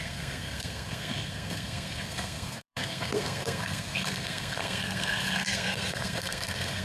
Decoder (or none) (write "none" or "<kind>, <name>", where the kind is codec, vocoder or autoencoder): codec, SNAC